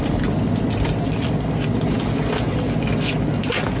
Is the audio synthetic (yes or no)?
no